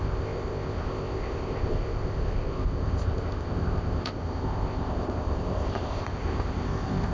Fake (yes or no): yes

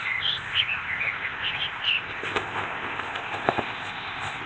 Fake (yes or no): yes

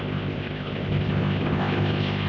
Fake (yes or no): yes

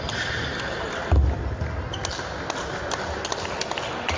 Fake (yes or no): no